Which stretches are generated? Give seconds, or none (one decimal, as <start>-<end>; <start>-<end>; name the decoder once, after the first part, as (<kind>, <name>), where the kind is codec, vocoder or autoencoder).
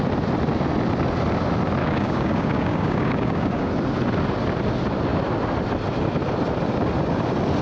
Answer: 1.8-3.7 (codec, DAC)